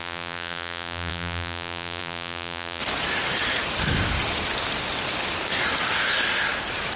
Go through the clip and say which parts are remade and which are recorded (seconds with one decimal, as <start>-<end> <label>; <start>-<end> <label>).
0.0-2.8 remade; 2.8-7.0 recorded